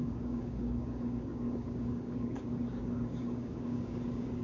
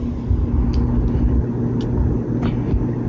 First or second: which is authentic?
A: second